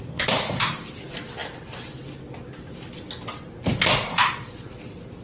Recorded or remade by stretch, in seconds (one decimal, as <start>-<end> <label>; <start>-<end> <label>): 0.0-5.2 recorded